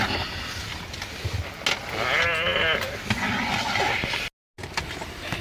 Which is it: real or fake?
real